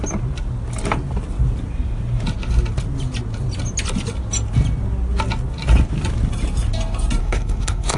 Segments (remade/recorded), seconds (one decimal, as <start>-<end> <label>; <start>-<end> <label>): 0.0-7.2 recorded; 7.2-8.0 remade